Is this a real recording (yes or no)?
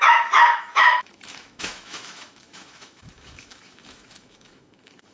no